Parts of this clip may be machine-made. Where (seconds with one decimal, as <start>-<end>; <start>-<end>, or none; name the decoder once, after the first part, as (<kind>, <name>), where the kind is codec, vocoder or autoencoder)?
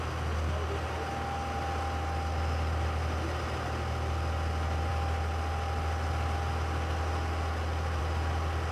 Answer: none